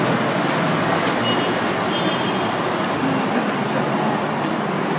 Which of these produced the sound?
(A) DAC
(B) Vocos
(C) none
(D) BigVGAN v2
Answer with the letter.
C